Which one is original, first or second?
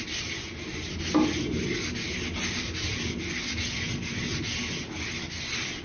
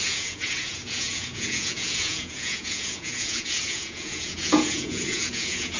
first